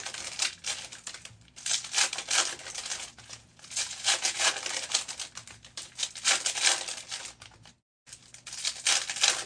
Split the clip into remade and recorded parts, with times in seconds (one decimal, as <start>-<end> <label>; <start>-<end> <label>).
0.0-2.9 recorded; 2.9-4.5 remade; 4.5-9.5 recorded